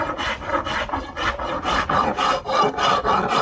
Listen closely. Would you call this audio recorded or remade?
recorded